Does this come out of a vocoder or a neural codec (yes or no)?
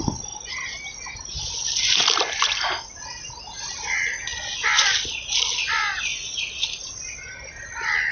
no